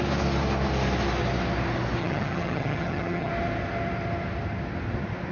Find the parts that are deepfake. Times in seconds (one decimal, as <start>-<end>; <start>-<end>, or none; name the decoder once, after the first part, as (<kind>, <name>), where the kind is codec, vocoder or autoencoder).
2.0-3.3 (vocoder, HiFi-GAN)